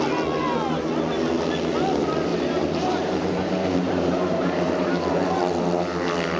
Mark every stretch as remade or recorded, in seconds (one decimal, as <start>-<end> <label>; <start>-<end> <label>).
0.0-2.3 recorded; 2.3-5.4 remade; 5.4-6.4 recorded